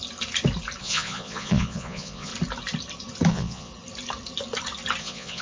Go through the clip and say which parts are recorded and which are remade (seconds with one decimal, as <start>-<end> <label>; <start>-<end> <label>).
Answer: 0.0-0.8 recorded; 0.8-2.3 remade; 2.3-3.3 recorded; 3.3-3.7 remade; 3.7-5.0 recorded; 5.0-5.4 remade